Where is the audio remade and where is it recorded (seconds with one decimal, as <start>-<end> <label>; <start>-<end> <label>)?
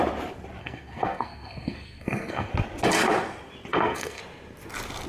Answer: 0.0-0.6 recorded; 0.6-2.5 remade; 2.5-3.7 recorded; 3.7-4.2 remade; 4.2-5.1 recorded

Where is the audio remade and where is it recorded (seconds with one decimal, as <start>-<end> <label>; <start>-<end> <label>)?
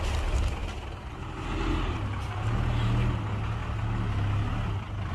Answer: 0.0-5.1 recorded